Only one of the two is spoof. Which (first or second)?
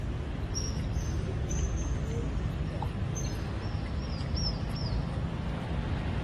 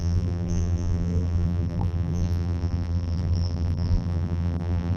second